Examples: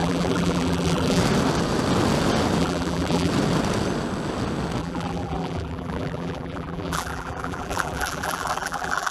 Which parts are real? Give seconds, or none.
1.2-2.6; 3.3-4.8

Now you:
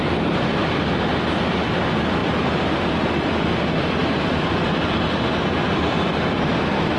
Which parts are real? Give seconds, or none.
2.2-2.8; 4.0-5.8

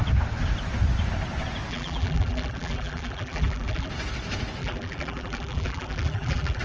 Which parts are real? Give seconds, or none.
0.0-1.7; 3.9-4.6

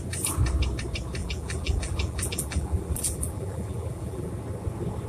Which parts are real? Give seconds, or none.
0.0-1.2; 4.3-5.1

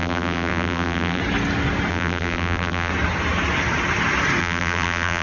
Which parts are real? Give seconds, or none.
1.2-1.9; 2.9-4.4

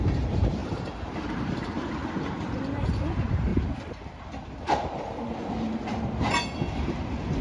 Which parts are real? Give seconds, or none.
2.0-2.7; 3.5-7.4

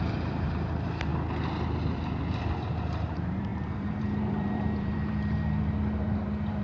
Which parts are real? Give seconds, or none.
1.1-2.6

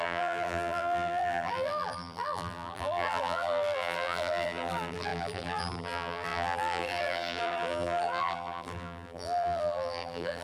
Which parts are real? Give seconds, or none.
none